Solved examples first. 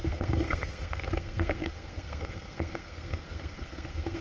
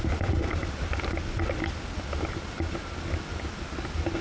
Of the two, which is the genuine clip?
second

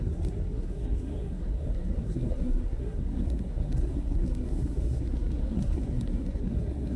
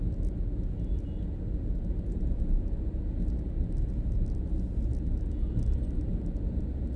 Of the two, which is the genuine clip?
second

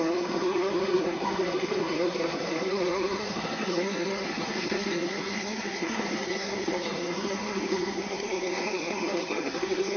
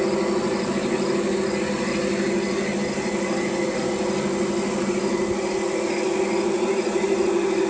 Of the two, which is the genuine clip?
second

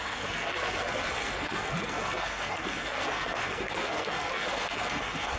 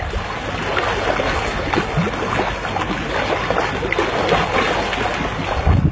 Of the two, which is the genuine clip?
second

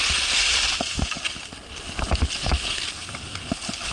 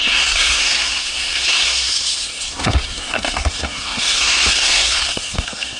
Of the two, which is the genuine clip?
first